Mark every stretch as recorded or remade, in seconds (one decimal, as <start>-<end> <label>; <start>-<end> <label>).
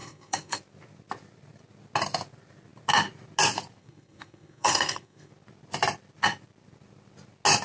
0.0-0.6 remade; 0.6-3.8 recorded; 3.8-5.3 remade; 5.3-7.6 recorded